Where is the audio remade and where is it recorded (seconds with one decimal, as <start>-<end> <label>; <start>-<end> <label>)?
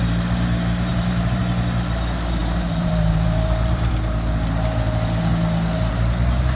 0.0-0.9 recorded; 0.9-1.4 remade; 1.4-2.4 recorded; 2.4-3.9 remade; 3.9-6.6 recorded